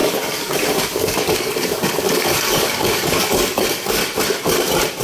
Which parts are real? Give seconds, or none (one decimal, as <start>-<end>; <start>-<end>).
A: 4.0-5.0